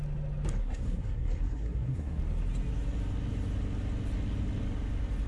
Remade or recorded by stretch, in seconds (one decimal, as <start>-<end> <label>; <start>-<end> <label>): 0.0-0.6 recorded; 0.6-2.2 remade; 2.2-5.3 recorded